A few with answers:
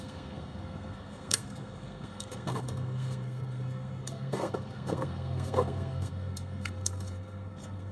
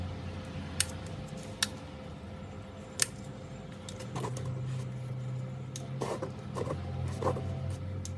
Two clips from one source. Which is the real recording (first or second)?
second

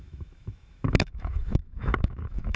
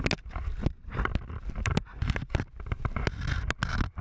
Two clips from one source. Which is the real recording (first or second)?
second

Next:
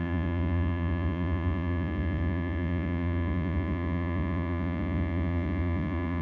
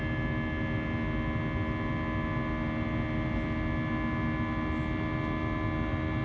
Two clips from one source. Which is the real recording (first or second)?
second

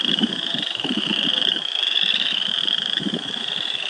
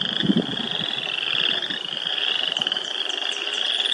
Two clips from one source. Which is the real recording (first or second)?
second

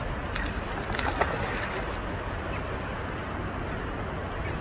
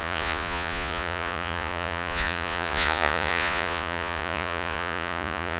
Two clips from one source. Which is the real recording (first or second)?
first